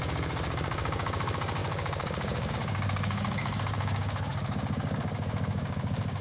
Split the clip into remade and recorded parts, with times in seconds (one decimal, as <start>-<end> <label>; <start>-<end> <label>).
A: 0.0-6.2 remade